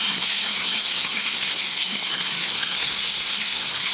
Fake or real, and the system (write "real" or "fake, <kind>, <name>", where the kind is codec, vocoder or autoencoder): fake, codec, SNAC